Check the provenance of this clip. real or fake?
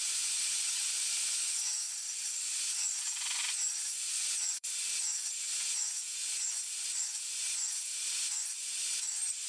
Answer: fake